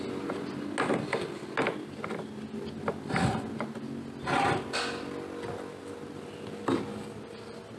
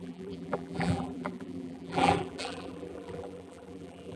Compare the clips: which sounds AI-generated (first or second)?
second